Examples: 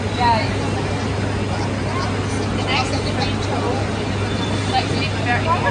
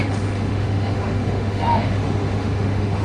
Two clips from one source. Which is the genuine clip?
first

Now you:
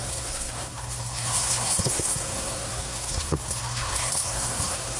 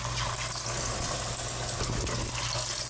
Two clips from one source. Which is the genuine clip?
second